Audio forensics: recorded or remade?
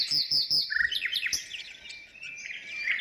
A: recorded